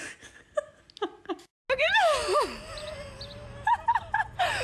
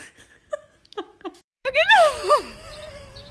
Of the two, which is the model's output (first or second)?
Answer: second